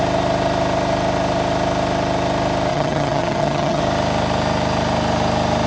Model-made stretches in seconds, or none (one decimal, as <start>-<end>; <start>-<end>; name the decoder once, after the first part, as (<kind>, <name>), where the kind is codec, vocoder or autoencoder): 2.7-3.8 (vocoder, HiFi-GAN)